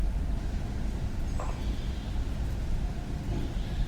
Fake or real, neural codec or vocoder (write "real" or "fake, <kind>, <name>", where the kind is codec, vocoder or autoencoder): real